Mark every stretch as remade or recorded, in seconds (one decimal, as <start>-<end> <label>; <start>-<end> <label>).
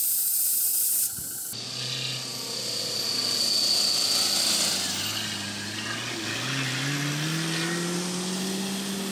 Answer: 0.0-9.1 recorded